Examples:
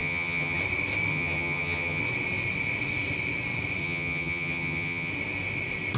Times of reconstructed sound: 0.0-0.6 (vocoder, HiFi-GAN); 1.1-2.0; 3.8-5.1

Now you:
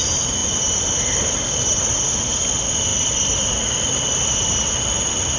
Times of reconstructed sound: none

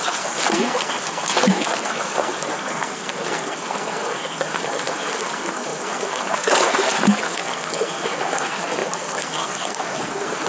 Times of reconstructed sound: 0.0-10.5 (codec, SNAC)